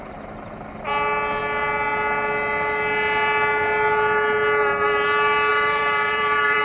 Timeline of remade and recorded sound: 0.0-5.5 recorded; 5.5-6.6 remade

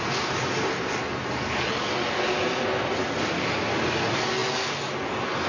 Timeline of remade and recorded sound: 0.0-5.5 recorded

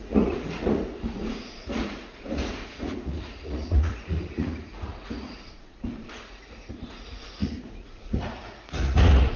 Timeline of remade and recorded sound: 0.0-9.4 remade